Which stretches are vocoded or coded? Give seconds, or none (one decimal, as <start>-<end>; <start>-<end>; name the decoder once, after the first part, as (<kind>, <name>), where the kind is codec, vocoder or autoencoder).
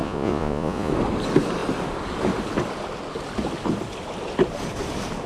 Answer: 0.0-0.9 (vocoder, Vocos)